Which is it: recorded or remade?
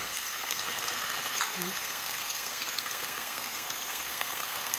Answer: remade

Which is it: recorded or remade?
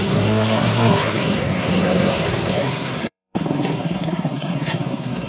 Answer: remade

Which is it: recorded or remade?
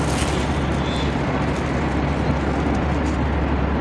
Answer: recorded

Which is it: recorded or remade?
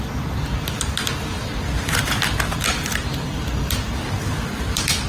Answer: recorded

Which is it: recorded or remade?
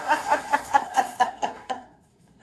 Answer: remade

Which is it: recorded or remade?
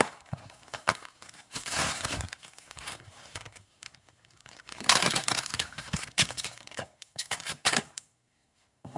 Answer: remade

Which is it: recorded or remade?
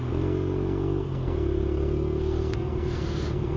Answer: remade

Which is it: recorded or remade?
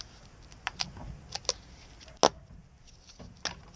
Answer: recorded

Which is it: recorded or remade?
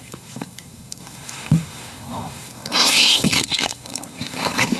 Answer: remade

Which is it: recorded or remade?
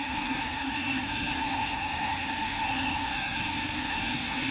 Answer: remade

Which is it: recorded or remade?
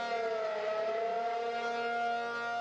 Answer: recorded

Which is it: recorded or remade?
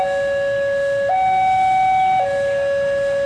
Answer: recorded